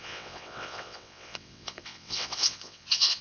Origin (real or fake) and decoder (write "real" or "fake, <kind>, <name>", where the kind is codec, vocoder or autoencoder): fake, vocoder, WaveNeXt